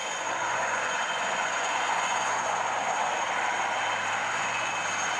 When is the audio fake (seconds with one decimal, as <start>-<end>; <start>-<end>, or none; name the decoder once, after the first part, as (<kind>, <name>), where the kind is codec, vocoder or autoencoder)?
0.0-3.1 (vocoder, Vocos); 4.2-4.7